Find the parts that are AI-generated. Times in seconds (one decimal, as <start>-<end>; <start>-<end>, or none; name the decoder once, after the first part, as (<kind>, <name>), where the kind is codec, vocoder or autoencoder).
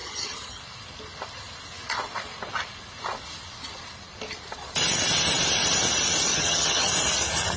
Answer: 0.0-0.6 (vocoder, HiFi-GAN); 6.3-6.9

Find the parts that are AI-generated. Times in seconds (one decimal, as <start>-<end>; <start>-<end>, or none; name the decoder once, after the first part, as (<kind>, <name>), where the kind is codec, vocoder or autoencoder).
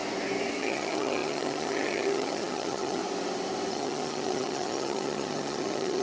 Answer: 0.6-3.0 (vocoder, HiFi-GAN); 3.7-6.0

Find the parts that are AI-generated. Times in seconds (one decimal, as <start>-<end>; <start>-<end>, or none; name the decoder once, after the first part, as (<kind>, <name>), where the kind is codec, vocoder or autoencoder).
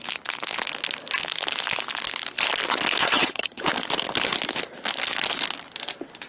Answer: 3.0-3.6 (vocoder, HiFi-GAN)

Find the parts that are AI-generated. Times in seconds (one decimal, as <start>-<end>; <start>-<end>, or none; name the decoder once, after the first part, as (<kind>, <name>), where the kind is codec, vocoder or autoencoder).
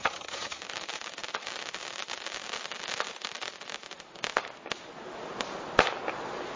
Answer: 0.0-0.6 (vocoder, HiFi-GAN)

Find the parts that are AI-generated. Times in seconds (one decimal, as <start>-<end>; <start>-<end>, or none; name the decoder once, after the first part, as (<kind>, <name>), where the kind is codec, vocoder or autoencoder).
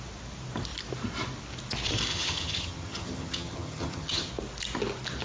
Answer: 2.1-4.3 (vocoder, HiFi-GAN)